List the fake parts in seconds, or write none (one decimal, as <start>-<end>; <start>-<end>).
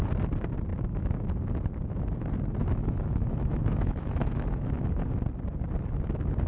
0.7-1.3; 2.6-4.8